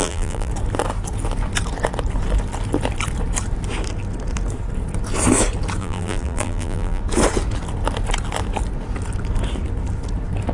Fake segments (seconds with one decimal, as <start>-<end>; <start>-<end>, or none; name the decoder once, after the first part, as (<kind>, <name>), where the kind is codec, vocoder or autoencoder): 0.0-0.5 (vocoder, BigVGAN v2); 5.8-7.0